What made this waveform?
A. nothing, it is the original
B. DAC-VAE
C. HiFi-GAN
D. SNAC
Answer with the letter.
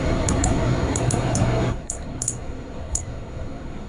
D